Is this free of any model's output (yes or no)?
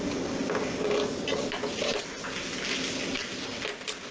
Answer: yes